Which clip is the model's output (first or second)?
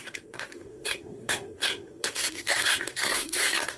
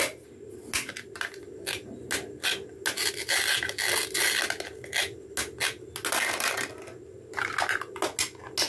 first